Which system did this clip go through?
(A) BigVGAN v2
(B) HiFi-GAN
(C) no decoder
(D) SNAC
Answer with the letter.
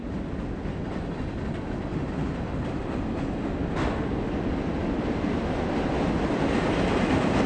C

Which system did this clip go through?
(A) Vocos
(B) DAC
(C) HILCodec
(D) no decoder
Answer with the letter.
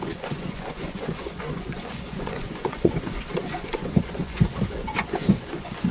A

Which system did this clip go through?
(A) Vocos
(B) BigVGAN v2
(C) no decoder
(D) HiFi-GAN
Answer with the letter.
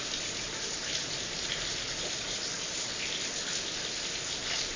C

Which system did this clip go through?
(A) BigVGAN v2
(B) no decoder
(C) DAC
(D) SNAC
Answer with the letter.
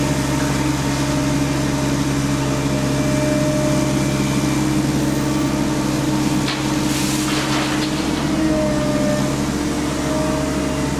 B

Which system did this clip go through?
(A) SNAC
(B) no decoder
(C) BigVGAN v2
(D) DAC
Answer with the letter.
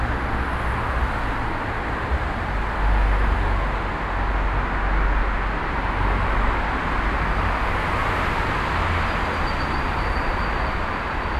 B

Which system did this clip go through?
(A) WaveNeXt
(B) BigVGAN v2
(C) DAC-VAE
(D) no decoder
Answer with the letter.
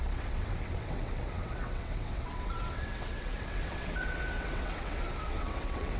A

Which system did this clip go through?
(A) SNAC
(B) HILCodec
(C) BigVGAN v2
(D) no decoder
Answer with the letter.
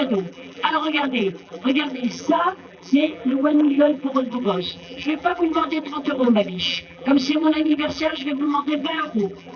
C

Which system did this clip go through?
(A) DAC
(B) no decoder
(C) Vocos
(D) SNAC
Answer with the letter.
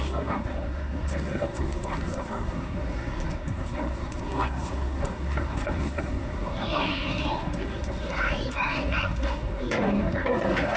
D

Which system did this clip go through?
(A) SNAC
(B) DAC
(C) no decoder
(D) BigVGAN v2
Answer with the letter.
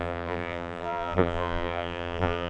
D